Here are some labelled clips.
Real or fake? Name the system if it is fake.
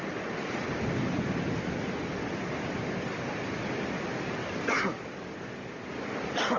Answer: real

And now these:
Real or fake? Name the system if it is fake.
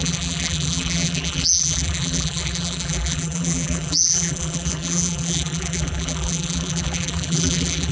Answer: fake, vocoder, BigVGAN v2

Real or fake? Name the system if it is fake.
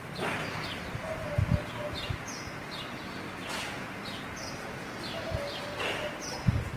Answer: real